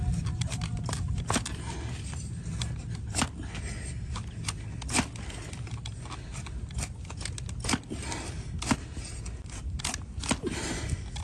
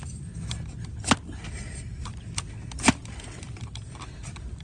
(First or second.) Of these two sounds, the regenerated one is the second